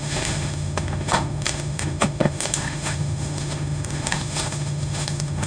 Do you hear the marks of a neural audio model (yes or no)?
yes